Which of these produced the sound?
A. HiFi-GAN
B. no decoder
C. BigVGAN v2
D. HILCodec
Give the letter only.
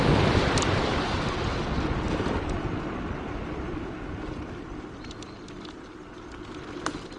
B